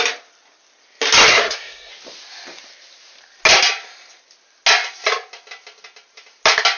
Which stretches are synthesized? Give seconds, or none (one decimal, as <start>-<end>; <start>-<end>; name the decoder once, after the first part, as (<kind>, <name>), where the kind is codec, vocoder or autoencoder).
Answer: 1.3-1.9 (codec, SNAC)